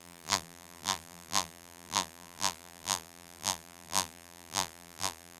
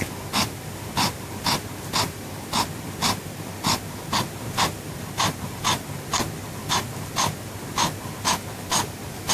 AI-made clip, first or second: first